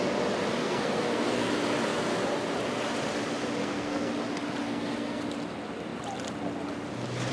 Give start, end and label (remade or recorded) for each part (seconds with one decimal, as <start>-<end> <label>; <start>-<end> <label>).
0.0-0.6 recorded; 0.6-1.5 remade; 1.5-3.6 recorded; 3.6-4.1 remade; 4.1-4.6 recorded; 4.6-5.2 remade; 5.2-7.3 recorded